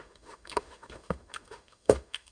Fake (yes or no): yes